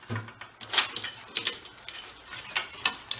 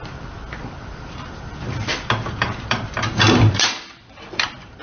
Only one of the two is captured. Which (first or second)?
first